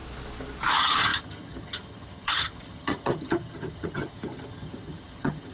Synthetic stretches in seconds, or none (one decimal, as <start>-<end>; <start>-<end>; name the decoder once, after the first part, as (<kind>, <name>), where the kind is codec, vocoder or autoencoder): 0.7-5.5 (vocoder, HiFi-GAN)